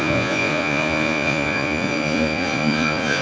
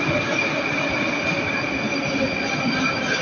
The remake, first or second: first